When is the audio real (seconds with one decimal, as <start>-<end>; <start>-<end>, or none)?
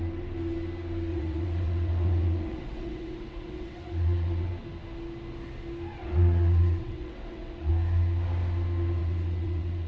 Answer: 0.0-1.1; 4.5-6.0; 7.7-9.0